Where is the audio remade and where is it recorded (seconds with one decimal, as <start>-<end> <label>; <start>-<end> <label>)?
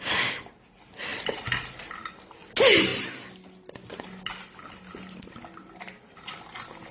0.0-6.9 recorded